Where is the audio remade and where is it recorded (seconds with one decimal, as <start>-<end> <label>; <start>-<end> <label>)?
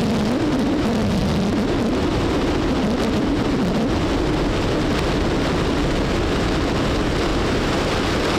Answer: 0.0-7.3 recorded; 7.3-7.9 remade; 7.9-8.4 recorded